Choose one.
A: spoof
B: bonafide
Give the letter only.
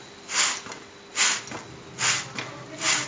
B